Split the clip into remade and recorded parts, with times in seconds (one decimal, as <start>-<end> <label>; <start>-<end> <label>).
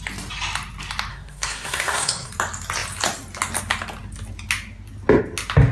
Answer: 0.0-1.1 recorded; 1.1-2.3 remade; 2.3-5.7 recorded